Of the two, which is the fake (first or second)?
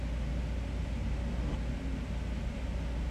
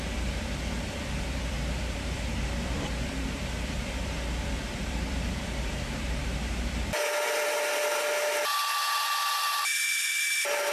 second